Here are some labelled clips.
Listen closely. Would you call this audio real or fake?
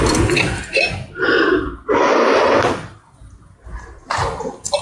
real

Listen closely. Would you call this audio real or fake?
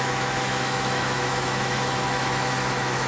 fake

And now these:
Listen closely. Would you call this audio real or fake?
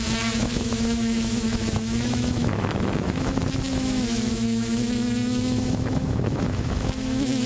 fake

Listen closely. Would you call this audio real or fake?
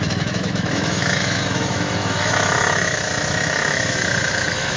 fake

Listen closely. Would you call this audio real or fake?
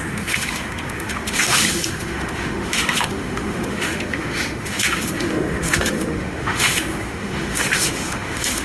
fake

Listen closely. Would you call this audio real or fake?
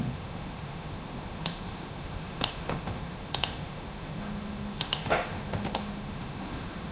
fake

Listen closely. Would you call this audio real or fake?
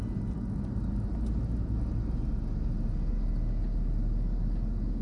real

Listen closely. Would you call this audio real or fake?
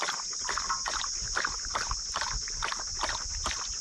real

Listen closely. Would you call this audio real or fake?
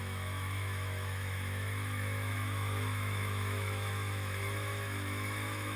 fake